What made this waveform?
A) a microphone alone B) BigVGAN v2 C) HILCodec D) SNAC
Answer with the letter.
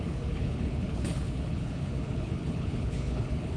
C